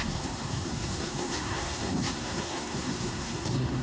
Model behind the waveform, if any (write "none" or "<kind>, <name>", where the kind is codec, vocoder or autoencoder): codec, SNAC